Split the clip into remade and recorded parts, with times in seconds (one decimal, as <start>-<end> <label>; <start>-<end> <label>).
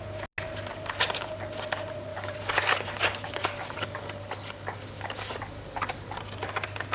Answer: 0.0-2.1 recorded; 2.1-6.2 remade; 6.2-6.9 recorded